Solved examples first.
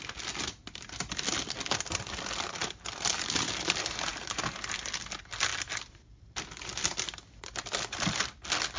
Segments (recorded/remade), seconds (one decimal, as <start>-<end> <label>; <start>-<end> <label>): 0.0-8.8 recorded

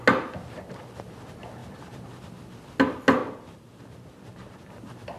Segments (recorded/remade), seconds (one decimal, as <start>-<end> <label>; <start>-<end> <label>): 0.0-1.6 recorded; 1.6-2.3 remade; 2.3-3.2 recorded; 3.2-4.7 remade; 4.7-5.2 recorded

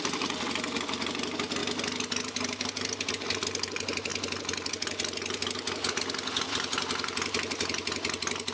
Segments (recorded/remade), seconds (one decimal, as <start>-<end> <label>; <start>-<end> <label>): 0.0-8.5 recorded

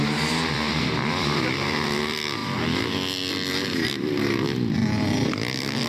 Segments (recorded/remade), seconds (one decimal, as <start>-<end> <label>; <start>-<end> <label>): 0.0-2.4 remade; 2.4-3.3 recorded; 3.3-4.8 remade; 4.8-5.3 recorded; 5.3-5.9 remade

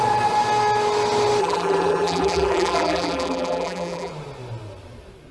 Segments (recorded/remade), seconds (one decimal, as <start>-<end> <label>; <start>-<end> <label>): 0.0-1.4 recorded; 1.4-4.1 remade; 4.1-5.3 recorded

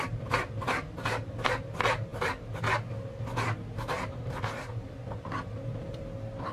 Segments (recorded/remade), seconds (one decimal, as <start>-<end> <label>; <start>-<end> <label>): 0.0-6.5 recorded